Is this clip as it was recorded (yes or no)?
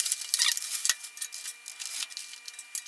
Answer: yes